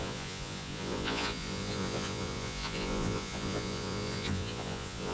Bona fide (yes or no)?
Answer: no